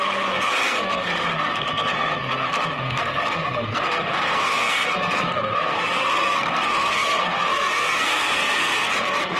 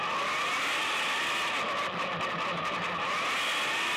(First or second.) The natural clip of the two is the second